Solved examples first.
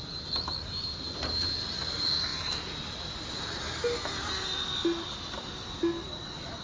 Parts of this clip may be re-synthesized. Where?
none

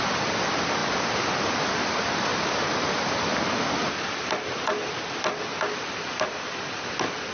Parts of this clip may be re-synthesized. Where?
none